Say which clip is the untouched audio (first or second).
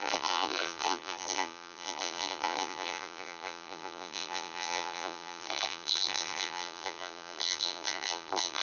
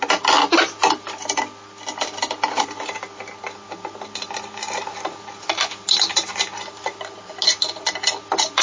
second